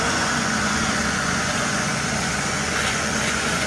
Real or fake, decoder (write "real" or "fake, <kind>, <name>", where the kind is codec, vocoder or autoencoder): fake, vocoder, Vocos